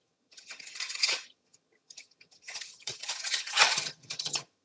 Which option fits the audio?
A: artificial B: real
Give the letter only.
A